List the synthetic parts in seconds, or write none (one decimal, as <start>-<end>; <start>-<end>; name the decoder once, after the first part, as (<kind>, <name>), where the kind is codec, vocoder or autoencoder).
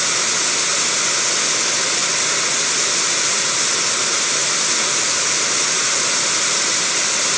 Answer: none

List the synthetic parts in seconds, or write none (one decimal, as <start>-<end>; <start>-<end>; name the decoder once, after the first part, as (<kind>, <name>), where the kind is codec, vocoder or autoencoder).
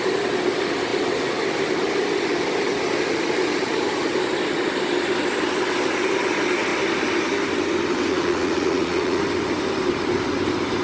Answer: 8.1-9.2 (vocoder, Vocos)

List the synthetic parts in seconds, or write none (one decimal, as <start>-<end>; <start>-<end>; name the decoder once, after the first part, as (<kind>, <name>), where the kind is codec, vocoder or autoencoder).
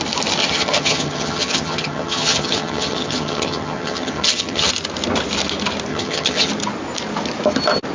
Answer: 0.4-4.7 (vocoder, HiFi-GAN); 5.9-6.5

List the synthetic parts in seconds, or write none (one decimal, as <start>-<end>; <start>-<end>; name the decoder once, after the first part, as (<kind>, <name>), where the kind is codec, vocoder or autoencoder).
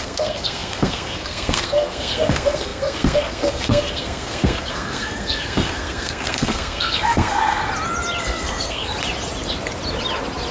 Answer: 0.0-7.6 (codec, SNAC); 8.2-8.9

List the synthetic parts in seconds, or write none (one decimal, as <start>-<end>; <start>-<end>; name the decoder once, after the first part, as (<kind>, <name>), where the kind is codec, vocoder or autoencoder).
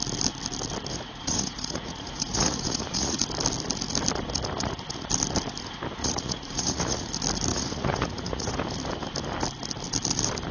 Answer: 0.9-3.2 (vocoder, Vocos); 6.0-7.1; 7.5-8.5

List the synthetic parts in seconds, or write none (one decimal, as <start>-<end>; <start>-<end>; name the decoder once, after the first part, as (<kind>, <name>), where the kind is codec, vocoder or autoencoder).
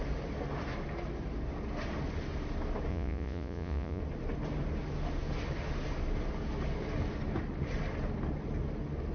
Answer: 2.9-4.0 (vocoder, Vocos)